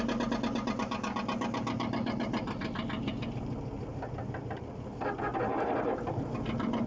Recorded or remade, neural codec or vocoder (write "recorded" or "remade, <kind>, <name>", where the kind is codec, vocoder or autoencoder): recorded